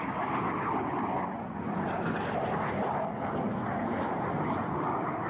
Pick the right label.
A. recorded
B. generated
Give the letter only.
A